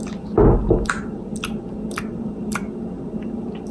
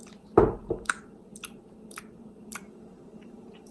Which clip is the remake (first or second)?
second